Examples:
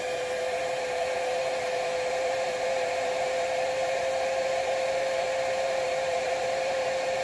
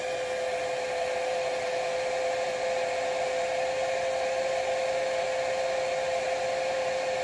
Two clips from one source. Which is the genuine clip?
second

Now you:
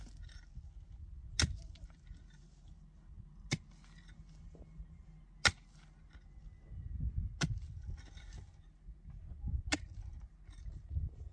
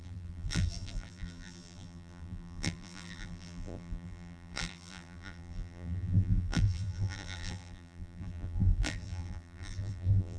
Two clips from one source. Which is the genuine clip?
first